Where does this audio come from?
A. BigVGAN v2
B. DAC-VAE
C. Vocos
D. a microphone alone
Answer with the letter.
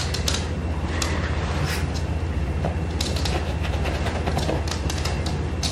D